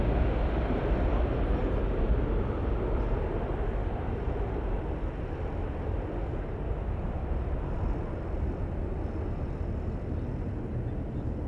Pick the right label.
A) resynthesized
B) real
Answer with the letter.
B